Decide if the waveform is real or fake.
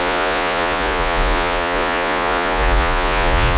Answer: fake